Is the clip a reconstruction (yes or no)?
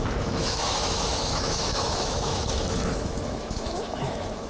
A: yes